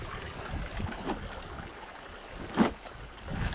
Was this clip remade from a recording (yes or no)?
yes